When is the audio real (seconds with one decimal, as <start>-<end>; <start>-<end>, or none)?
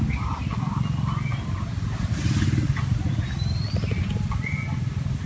0.0-5.3